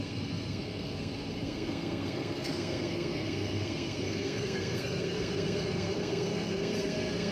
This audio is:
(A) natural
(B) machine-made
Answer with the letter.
B